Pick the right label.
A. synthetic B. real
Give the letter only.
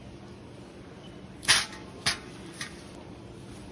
A